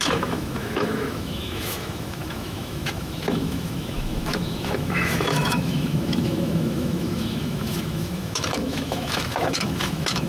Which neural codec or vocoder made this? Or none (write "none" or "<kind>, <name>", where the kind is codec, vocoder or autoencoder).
autoencoder, DAC-VAE